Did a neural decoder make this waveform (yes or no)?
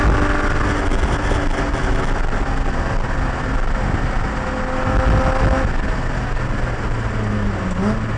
no